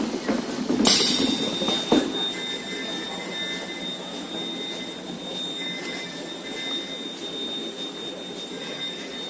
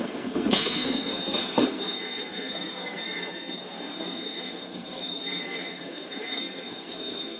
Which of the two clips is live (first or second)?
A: first